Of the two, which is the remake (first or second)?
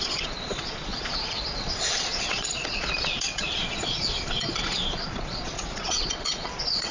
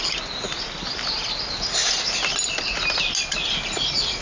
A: first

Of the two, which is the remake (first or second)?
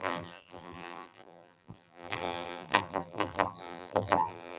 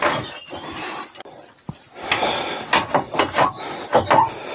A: first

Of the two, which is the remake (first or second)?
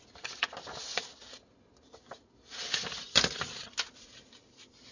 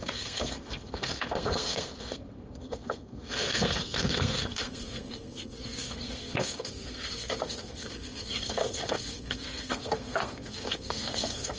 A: second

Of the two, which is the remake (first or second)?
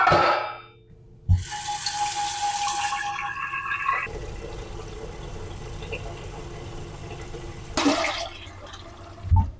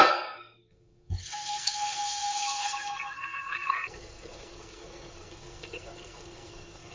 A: second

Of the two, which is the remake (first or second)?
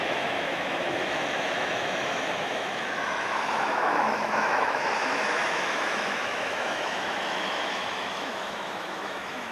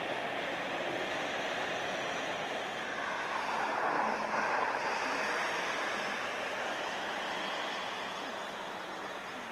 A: first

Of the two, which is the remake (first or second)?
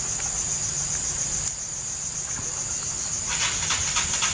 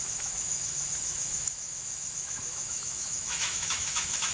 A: second